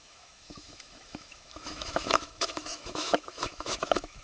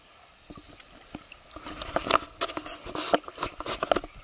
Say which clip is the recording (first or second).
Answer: second